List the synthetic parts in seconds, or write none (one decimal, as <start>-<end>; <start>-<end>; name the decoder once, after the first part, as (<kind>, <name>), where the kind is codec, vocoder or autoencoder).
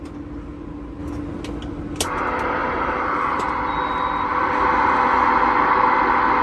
2.6-3.5 (vocoder, BigVGAN v2)